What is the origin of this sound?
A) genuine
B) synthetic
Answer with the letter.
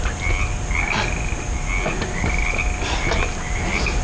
A